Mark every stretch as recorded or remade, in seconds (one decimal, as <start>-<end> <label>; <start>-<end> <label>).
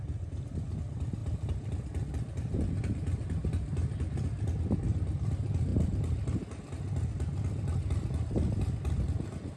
0.0-9.6 recorded